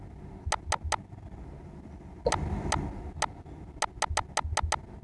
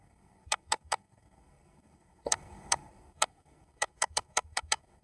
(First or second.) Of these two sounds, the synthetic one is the second